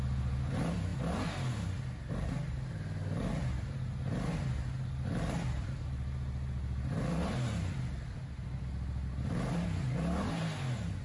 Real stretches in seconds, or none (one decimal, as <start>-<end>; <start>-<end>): 0.0-11.0